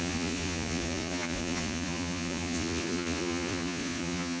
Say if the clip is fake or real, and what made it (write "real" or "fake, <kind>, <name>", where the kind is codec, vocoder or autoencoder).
fake, vocoder, Vocos